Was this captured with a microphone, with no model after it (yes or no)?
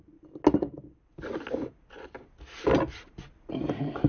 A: yes